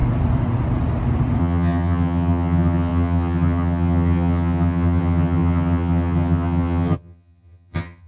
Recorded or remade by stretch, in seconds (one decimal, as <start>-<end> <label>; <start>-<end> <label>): 0.0-1.4 recorded; 1.4-8.1 remade